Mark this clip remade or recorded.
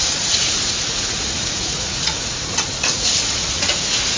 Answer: remade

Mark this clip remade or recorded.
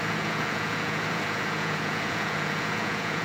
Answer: remade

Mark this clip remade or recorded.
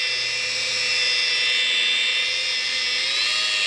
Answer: recorded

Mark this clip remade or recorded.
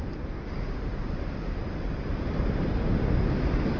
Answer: recorded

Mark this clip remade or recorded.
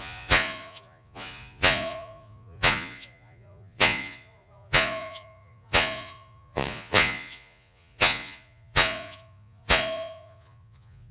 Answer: remade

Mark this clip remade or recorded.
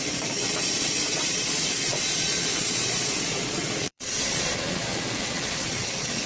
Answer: remade